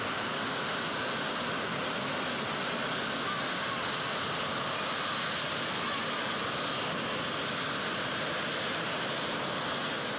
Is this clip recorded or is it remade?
recorded